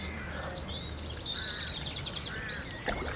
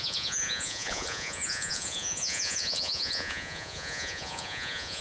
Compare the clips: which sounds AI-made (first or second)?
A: second